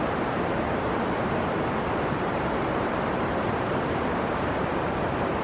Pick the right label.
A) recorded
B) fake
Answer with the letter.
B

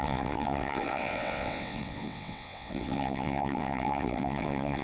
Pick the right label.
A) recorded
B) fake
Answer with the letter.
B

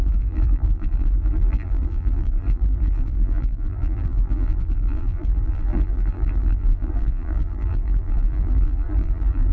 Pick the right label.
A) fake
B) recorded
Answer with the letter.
A